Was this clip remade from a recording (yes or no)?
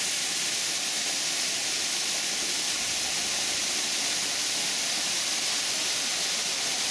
no